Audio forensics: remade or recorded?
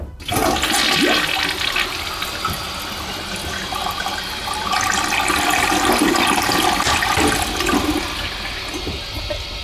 recorded